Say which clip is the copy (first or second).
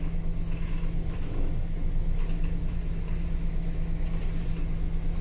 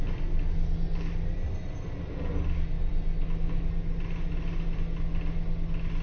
first